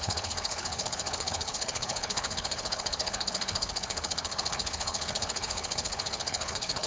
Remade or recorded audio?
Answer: remade